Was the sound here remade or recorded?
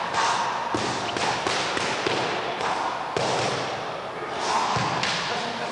recorded